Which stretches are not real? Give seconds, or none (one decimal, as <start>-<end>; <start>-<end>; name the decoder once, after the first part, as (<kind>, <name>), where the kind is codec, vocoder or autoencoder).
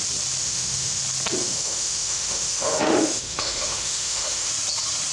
0.4-1.0 (autoencoder, DAC-VAE); 1.4-4.5